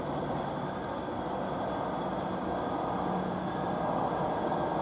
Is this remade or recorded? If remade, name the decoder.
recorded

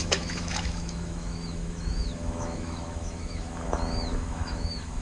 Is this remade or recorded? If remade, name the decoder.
remade, autoencoder, DAC-VAE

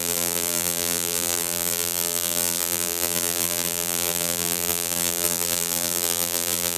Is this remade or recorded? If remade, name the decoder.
remade, vocoder, BigVGAN v2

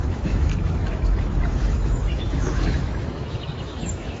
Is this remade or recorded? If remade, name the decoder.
remade, autoencoder, DAC-VAE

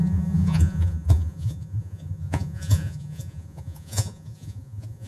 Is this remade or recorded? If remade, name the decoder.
remade, vocoder, Vocos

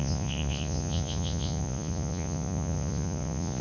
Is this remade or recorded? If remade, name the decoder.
remade, vocoder, Vocos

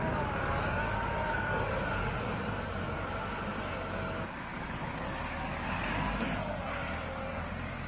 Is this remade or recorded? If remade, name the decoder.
remade, codec, DAC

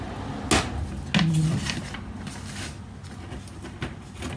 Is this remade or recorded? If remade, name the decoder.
recorded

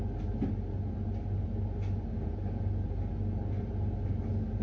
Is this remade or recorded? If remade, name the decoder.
recorded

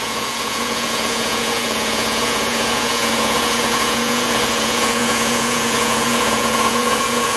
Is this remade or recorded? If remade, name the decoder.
remade, vocoder, Vocos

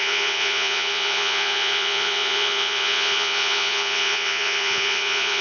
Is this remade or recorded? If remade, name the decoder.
remade, vocoder, Vocos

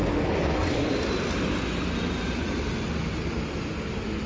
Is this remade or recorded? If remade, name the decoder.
recorded